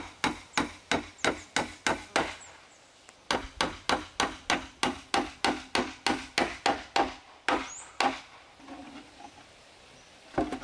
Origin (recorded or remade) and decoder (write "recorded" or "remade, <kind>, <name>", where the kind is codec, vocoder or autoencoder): recorded